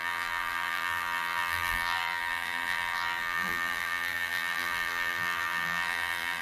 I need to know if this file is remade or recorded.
remade